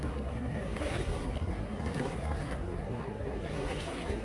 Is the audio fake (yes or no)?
yes